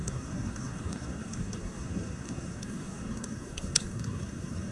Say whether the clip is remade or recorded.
remade